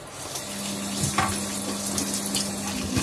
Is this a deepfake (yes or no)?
no